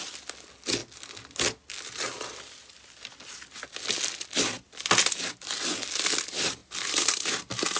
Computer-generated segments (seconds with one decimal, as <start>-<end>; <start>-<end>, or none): 6.6-7.3